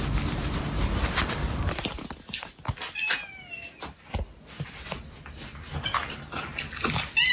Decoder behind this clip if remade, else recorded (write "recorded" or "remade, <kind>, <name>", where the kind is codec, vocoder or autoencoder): recorded